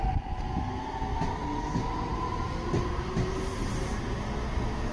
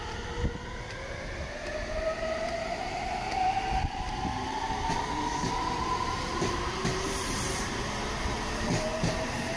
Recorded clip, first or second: first